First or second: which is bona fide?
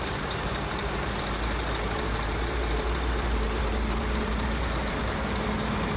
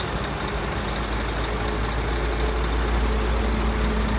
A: second